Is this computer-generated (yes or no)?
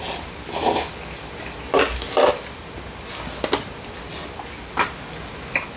no